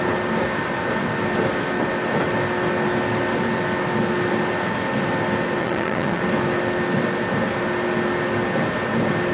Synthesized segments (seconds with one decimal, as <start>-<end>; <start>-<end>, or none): 5.6-6.2